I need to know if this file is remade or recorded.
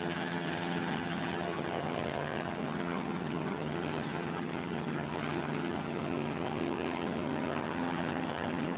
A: remade